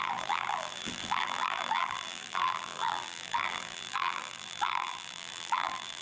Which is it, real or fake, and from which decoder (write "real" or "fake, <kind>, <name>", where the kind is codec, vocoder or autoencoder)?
fake, vocoder, BigVGAN v2